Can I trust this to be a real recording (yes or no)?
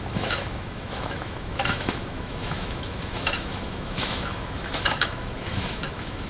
no